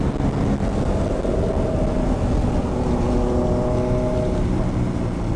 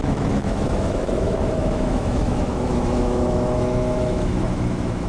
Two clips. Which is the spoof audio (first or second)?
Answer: second